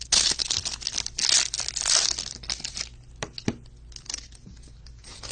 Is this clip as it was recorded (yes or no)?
yes